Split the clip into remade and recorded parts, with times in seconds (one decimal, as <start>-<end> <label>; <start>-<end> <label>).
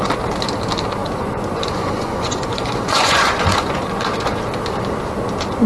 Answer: 0.0-1.0 recorded; 1.0-4.4 remade; 4.4-5.7 recorded